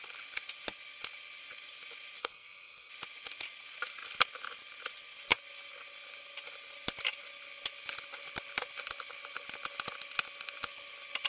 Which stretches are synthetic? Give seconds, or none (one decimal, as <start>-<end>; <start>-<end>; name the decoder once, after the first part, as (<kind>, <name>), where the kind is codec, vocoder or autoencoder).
2.2-2.9 (codec, SNAC)